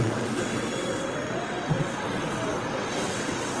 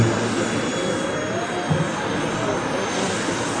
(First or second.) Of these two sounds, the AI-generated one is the first